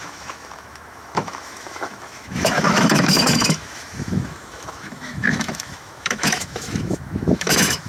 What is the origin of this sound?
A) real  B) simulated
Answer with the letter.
B